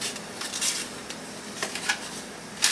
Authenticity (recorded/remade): recorded